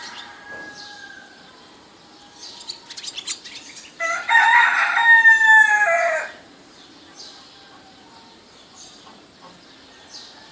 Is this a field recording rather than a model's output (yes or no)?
yes